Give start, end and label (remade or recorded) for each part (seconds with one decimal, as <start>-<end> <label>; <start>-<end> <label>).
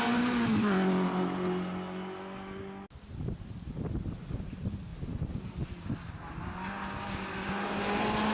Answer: 0.0-8.3 recorded